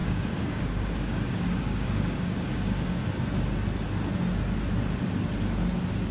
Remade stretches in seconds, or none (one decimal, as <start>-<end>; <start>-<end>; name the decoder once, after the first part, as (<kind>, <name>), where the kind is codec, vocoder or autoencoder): 0.0-3.0 (codec, DAC)